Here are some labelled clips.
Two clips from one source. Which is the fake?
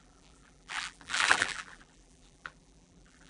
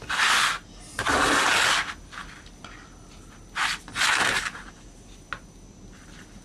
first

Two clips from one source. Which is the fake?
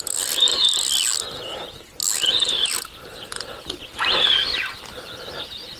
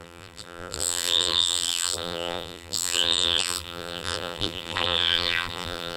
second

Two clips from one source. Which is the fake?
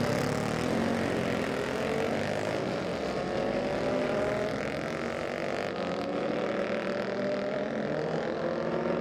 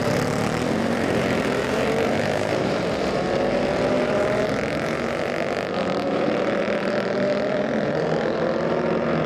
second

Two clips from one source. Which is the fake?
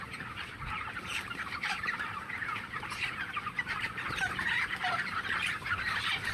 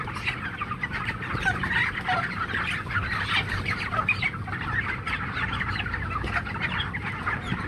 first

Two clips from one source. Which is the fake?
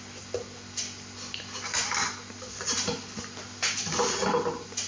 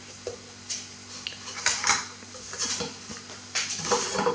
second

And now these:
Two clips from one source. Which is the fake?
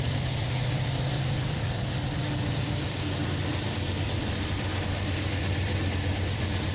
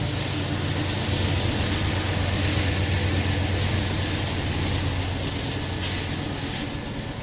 first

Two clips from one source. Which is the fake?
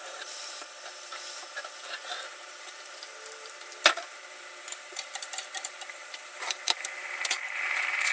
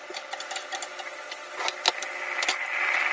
first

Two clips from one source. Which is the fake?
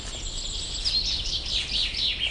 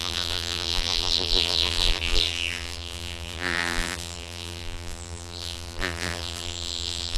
second